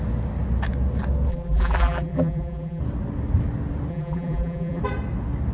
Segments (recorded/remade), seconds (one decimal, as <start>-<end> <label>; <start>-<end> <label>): 0.0-1.3 recorded; 1.3-2.8 remade; 2.8-3.9 recorded; 3.9-4.8 remade; 4.8-5.5 recorded